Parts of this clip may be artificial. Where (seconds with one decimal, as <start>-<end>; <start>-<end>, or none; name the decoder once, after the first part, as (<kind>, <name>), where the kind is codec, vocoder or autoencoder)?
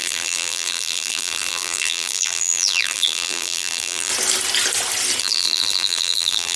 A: 0.0-4.1 (vocoder, BigVGAN v2); 5.2-6.6